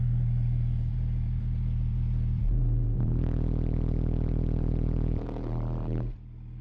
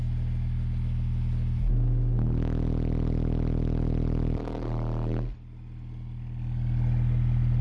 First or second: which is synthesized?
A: first